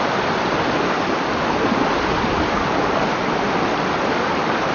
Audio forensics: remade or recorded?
recorded